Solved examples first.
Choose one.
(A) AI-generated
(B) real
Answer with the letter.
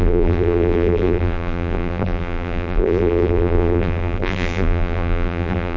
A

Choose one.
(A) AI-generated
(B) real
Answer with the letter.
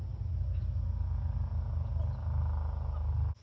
B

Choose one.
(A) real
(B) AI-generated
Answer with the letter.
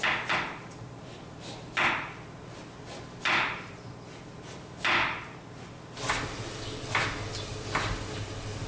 A